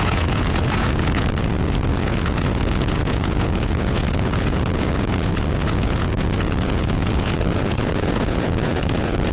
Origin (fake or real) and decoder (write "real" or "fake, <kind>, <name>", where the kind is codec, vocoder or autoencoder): fake, vocoder, Vocos